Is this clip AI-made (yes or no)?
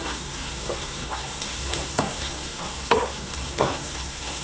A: yes